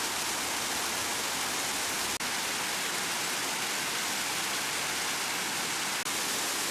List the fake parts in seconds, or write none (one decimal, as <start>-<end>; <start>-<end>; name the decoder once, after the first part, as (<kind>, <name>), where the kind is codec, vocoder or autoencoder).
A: none